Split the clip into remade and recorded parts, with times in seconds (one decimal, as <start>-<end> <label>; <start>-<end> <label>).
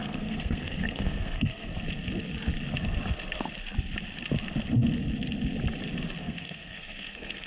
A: 0.0-1.7 remade; 1.7-6.2 recorded; 6.2-7.5 remade